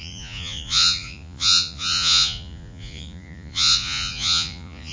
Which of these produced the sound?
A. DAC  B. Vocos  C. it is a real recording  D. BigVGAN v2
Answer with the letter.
B